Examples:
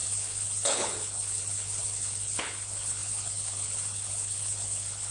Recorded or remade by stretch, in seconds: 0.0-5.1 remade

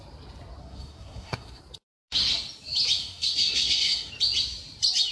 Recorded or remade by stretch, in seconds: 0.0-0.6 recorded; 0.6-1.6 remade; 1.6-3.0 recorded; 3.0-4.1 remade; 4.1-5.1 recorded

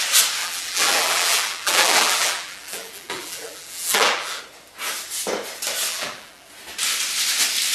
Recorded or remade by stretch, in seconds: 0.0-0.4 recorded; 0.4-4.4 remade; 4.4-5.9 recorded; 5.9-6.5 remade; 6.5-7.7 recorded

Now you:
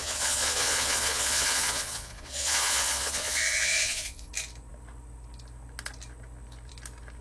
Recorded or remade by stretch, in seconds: 0.0-4.3 remade; 4.3-7.2 recorded

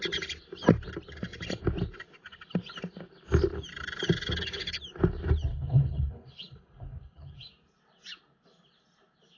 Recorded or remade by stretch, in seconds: 0.0-5.5 recorded; 5.5-7.5 remade; 7.5-9.4 recorded

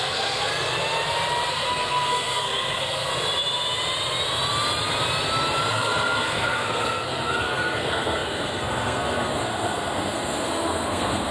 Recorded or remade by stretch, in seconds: 0.0-0.5 remade; 0.5-1.5 recorded; 1.5-3.1 remade; 3.1-5.7 recorded; 5.7-11.3 remade

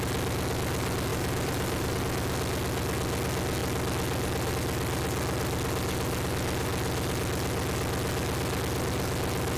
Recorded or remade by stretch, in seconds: 0.0-1.1 recorded; 1.1-2.0 remade; 2.0-9.6 recorded